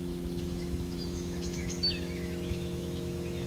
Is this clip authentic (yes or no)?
no